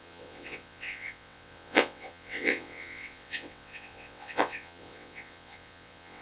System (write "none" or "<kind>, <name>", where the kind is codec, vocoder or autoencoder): vocoder, WaveNeXt